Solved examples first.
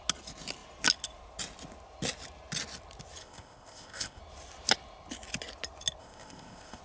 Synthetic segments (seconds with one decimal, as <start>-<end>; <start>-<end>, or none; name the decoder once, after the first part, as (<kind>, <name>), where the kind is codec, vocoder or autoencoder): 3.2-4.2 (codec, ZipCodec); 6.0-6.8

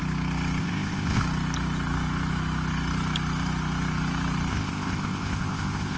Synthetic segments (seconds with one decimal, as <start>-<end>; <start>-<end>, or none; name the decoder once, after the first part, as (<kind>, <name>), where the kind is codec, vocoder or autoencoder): 0.6-1.2 (codec, ZipCodec); 4.5-6.0

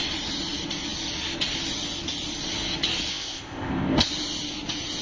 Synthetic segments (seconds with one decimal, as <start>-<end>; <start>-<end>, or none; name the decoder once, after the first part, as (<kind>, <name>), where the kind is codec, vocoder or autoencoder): 3.1-4.1 (codec, ZipCodec)

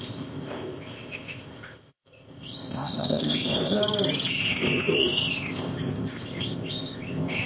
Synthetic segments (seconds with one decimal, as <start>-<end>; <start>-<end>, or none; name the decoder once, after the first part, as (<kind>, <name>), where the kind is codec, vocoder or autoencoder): 0.0-3.8 (codec, ZipCodec); 4.3-7.5

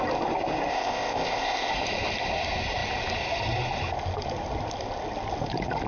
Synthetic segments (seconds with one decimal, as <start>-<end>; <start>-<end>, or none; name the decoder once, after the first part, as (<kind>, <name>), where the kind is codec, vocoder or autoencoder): 0.7-1.7 (codec, ZipCodec)

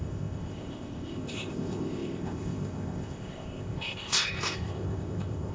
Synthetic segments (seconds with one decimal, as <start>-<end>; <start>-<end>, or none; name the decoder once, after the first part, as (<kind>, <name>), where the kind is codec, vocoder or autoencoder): 0.0-5.5 (codec, ZipCodec)

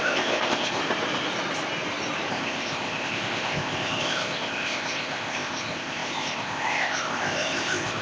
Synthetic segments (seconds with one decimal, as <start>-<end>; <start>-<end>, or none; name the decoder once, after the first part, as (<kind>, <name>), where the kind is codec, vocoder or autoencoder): 0.0-0.8 (codec, ZipCodec); 2.3-8.0

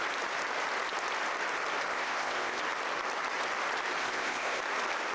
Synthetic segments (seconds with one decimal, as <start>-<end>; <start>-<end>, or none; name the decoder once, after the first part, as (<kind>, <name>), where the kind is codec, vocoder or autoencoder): 1.9-2.6 (codec, ZipCodec); 4.0-4.6